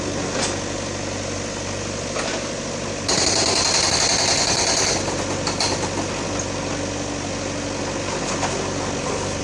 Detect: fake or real real